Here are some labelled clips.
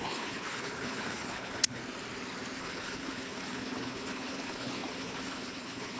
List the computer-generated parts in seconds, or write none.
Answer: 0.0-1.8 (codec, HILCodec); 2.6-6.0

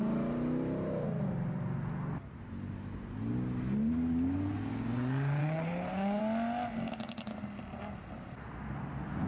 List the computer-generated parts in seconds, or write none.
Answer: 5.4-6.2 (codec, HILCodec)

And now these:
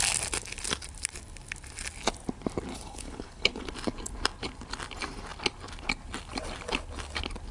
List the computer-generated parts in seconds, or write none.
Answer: 2.7-3.7 (codec, HILCodec)